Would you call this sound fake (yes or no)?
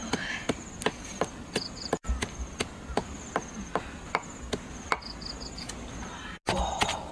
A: no